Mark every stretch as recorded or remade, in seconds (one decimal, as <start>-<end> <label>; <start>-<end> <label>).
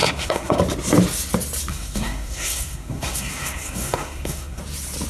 0.0-0.6 remade; 0.6-1.7 recorded; 1.7-4.6 remade; 4.6-5.1 recorded